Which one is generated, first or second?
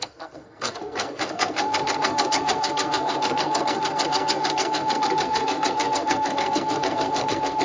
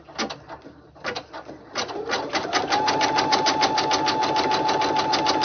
first